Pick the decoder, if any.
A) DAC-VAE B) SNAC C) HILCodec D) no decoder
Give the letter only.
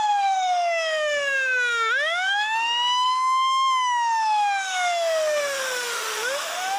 A